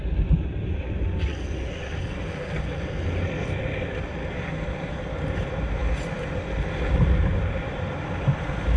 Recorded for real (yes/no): yes